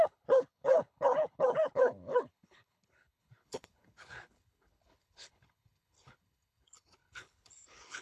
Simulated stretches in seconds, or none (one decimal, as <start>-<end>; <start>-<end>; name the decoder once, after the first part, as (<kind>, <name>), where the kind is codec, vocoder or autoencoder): 0.0-8.0 (codec, HILCodec)